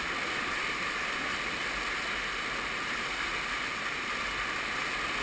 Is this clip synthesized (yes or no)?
no